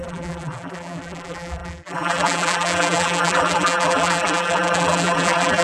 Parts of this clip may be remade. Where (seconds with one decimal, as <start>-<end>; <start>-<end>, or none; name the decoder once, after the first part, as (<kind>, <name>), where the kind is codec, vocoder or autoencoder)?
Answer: 0.0-5.6 (vocoder, BigVGAN v2)

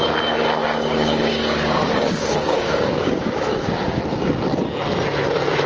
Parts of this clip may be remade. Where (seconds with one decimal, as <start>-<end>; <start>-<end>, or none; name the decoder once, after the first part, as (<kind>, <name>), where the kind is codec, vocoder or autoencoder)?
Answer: 0.6-4.0 (codec, DAC)

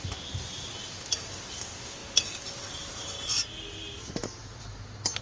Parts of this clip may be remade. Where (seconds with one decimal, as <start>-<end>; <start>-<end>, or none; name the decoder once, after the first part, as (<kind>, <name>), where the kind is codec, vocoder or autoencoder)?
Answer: none

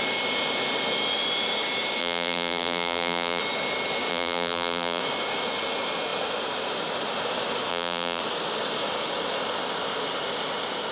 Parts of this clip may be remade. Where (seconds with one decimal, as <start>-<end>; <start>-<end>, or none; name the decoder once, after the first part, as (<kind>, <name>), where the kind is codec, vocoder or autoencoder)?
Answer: 2.0-3.4 (vocoder, BigVGAN v2); 4.1-5.0; 7.7-8.2

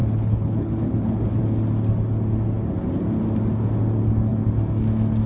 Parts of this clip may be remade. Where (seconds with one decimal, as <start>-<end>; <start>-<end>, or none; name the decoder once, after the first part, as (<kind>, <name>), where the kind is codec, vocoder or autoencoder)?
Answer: 0.0-1.4 (codec, HILCodec)

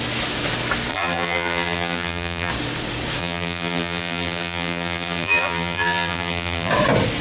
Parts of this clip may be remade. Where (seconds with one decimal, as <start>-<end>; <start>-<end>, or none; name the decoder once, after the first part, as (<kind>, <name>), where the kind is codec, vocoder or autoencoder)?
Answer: 0.9-2.5 (vocoder, BigVGAN v2); 3.2-6.7

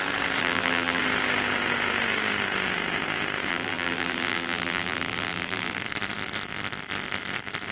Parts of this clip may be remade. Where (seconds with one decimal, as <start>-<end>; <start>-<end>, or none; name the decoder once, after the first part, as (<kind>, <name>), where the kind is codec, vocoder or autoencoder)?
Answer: 0.4-1.0 (vocoder, BigVGAN v2); 3.5-5.8

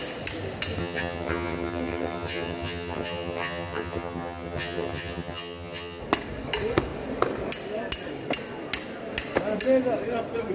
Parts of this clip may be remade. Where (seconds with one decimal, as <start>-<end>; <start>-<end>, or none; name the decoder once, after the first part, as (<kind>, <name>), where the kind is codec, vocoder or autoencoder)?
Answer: 0.8-6.0 (vocoder, HiFi-GAN)